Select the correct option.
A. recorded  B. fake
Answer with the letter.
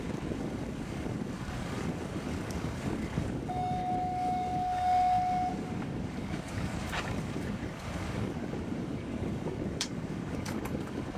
B